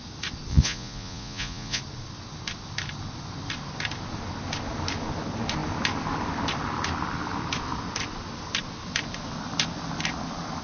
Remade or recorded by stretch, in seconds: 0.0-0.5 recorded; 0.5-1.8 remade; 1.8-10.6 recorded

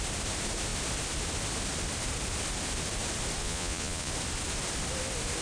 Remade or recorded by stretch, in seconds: 0.0-3.4 recorded; 3.4-4.1 remade; 4.1-5.4 recorded

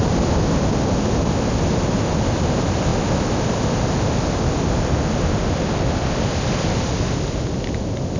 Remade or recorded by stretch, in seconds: 0.0-8.2 recorded

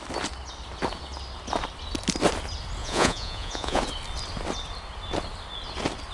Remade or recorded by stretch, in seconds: 0.0-2.8 recorded; 2.8-3.8 remade; 3.8-6.1 recorded

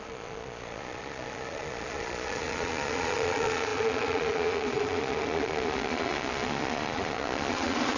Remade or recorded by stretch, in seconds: 0.0-8.0 remade

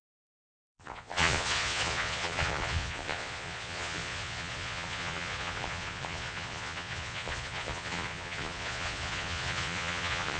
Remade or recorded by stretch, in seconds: 0.0-10.4 remade

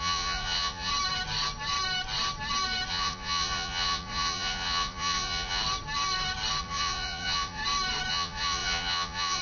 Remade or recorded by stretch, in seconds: 0.0-0.9 remade; 0.9-2.9 recorded; 2.9-5.6 remade; 5.6-6.6 recorded; 6.6-7.6 remade; 7.6-8.1 recorded; 8.1-9.4 remade